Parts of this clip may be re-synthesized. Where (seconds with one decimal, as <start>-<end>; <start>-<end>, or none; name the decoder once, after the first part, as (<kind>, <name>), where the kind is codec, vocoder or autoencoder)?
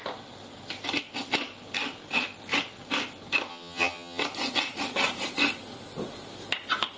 3.5-4.2 (vocoder, HiFi-GAN)